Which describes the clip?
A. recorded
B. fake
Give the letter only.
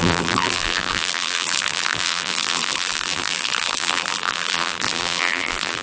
B